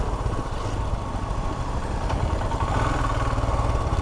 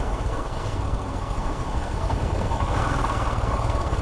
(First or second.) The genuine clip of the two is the first